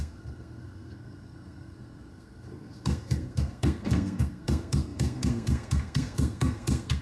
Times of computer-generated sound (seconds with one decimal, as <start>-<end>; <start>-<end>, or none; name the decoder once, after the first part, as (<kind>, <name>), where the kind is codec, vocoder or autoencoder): 0.0-7.0 (codec, SNAC)